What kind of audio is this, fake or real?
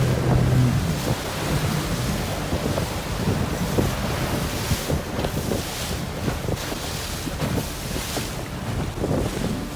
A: real